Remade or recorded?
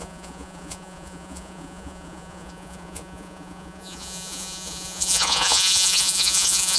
remade